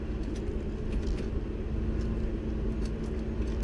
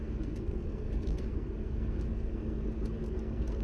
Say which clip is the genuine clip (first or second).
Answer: first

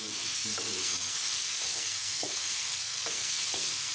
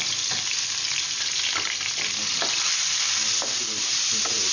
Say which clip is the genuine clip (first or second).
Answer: second